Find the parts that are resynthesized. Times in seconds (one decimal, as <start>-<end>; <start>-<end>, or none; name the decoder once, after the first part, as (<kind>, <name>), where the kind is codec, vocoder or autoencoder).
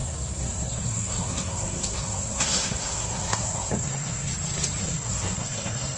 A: 0.0-4.3 (codec, SNAC); 4.8-6.0